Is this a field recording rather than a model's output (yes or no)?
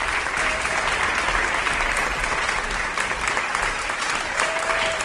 no